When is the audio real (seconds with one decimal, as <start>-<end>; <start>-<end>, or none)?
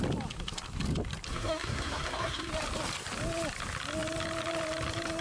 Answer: 0.0-1.3; 2.5-5.2